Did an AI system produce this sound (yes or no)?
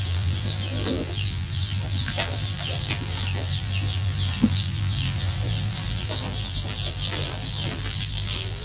yes